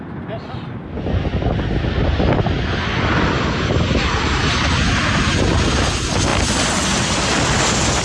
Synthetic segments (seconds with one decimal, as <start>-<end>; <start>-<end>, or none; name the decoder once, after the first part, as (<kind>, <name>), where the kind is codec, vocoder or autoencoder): none